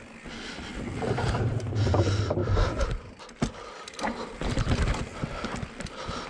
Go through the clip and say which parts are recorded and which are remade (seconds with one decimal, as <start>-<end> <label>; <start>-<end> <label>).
0.0-0.7 recorded; 0.7-1.7 remade; 1.7-2.4 recorded; 2.4-3.2 remade; 3.2-6.3 recorded